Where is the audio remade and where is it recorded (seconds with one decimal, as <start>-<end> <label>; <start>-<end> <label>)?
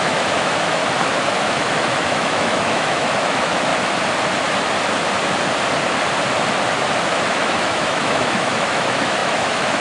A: 0.0-0.8 remade; 0.8-1.3 recorded; 1.3-3.7 remade; 3.7-7.0 recorded; 7.0-9.8 remade